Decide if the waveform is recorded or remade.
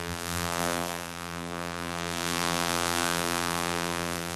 remade